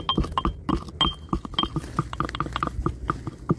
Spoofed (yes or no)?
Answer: no